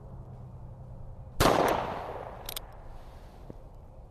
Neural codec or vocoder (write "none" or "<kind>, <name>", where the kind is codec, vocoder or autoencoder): none